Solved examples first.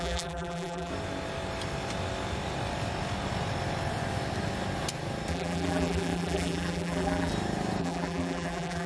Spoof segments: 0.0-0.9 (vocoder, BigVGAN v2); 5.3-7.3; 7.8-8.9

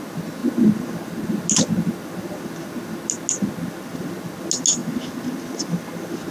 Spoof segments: none

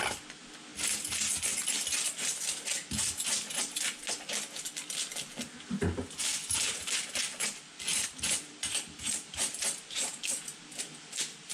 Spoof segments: 6.4-7.1 (vocoder, BigVGAN v2); 7.9-10.2